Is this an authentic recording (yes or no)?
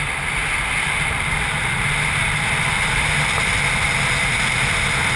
yes